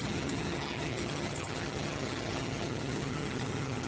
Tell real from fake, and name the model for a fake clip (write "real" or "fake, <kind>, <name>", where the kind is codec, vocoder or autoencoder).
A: fake, vocoder, HiFi-GAN